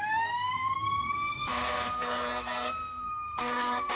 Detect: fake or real fake